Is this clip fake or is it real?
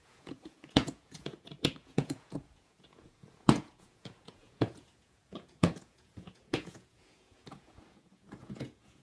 fake